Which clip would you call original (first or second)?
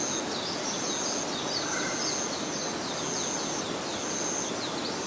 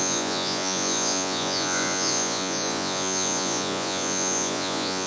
first